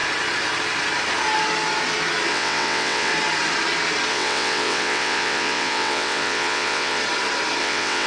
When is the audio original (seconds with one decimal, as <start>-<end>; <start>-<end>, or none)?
0.0-2.3; 3.1-4.1; 7.0-7.6